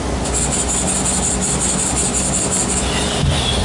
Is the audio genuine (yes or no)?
yes